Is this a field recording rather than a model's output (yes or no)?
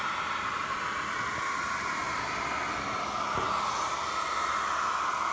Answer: yes